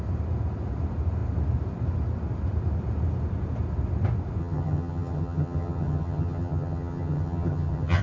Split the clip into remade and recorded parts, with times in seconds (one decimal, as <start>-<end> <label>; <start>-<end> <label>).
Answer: 0.0-4.4 recorded; 4.4-8.0 remade

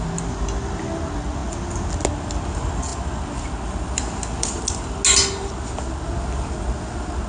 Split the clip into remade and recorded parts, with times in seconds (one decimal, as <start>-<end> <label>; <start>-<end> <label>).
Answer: 0.0-7.3 recorded

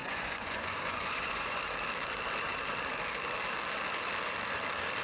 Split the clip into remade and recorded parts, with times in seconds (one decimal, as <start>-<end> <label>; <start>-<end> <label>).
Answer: 0.0-1.6 remade; 1.6-5.0 recorded